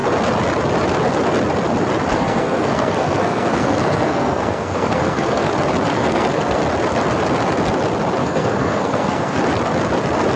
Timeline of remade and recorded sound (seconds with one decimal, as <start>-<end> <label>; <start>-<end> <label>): 0.0-2.1 recorded; 2.1-5.5 remade; 5.5-5.9 recorded; 5.9-6.6 remade; 6.6-8.2 recorded; 8.2-9.4 remade; 9.4-10.4 recorded